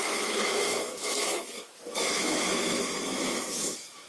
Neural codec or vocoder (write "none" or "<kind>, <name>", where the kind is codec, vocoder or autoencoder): autoencoder, DAC-VAE